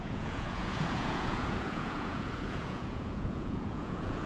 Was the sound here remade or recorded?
remade